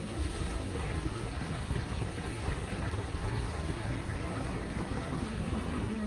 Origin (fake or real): fake